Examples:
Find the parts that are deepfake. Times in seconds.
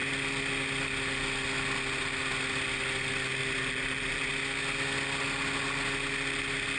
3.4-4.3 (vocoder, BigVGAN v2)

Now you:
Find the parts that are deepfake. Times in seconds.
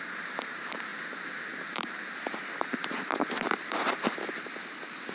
0.0-5.1 (vocoder, BigVGAN v2)